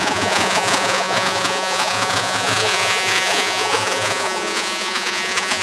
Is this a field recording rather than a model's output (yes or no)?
no